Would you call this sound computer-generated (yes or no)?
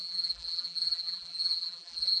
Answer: yes